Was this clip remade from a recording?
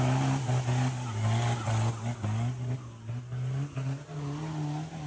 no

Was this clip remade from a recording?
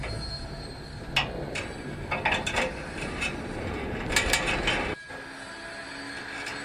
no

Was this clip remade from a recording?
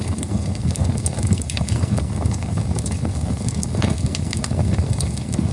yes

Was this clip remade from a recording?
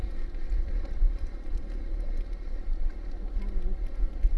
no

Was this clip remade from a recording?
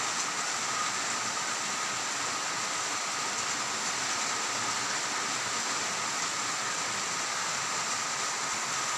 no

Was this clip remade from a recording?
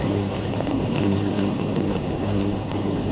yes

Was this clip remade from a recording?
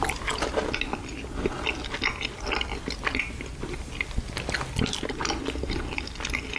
no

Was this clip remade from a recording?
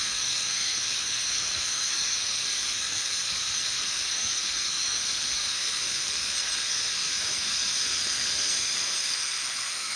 yes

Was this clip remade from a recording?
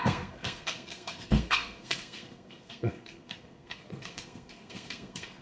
yes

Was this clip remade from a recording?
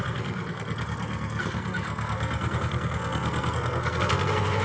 yes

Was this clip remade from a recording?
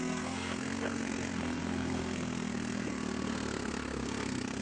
yes